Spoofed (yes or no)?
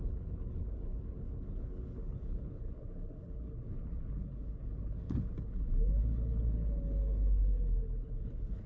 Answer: yes